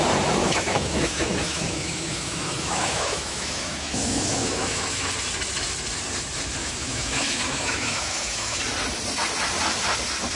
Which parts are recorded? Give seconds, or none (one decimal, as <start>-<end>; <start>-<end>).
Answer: 0.0-0.4; 5.1-6.6; 8.6-10.4